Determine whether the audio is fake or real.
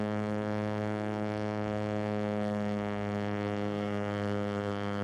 fake